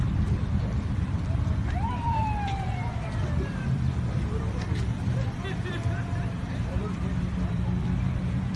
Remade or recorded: remade